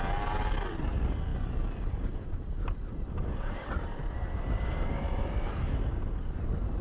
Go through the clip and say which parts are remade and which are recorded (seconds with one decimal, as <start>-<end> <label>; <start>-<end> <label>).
0.0-6.8 remade